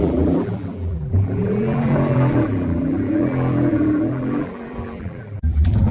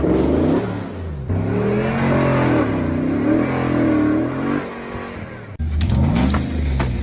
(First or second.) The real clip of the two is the second